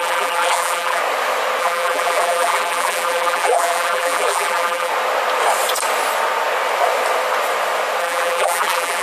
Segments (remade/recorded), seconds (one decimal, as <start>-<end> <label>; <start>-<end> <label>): 0.0-1.0 remade; 1.0-1.6 recorded; 1.6-4.9 remade; 4.9-8.0 recorded; 8.0-9.0 remade